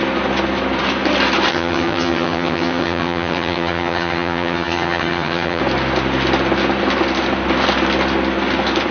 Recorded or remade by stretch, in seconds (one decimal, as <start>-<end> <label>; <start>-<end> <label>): 0.0-1.5 recorded; 1.5-5.6 remade; 5.6-8.9 recorded